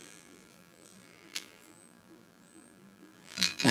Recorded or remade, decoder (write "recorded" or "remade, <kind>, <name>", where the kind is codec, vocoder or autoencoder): remade, vocoder, BigVGAN v2